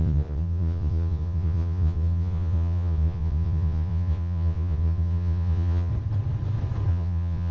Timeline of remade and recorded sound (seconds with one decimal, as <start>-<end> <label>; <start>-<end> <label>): 0.0-5.9 remade; 5.9-6.9 recorded; 6.9-7.5 remade